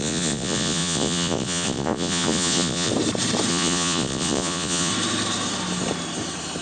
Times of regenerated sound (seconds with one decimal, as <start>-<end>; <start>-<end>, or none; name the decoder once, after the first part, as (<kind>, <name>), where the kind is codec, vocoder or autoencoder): 0.0-2.9 (vocoder, Vocos); 3.5-4.9